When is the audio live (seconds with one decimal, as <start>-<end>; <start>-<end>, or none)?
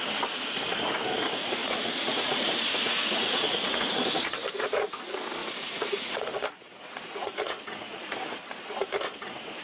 0.0-1.6; 4.8-5.4; 8.2-9.6